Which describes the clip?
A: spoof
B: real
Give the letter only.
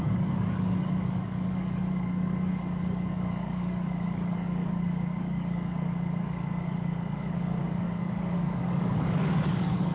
A